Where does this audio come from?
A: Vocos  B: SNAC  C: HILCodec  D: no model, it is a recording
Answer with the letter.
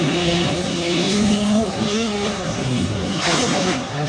B